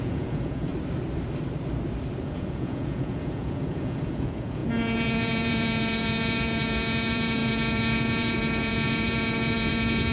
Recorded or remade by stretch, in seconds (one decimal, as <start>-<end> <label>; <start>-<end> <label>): 0.0-0.7 remade; 0.7-2.2 recorded; 2.2-10.1 remade